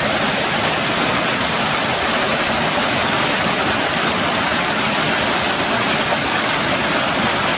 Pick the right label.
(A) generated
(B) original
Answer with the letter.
B